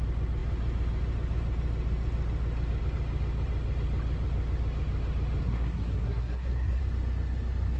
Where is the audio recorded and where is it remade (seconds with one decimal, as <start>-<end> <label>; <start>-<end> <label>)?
0.0-5.4 recorded; 5.4-6.8 remade; 6.8-7.8 recorded